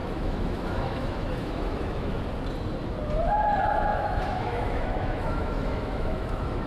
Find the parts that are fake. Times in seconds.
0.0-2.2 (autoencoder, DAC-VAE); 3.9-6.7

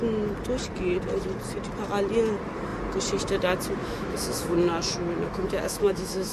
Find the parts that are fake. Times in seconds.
3.8-6.3 (autoencoder, DAC-VAE)

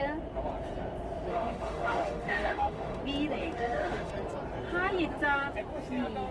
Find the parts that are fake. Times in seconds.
1.3-3.0 (autoencoder, DAC-VAE); 3.4-4.1

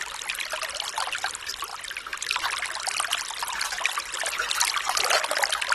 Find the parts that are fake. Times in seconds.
none